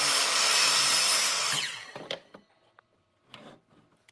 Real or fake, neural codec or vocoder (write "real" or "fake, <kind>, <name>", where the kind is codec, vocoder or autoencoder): real